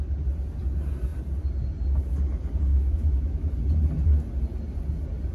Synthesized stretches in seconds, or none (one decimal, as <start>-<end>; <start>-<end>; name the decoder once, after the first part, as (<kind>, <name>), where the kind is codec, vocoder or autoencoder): 2.7-3.5 (autoencoder, DAC-VAE)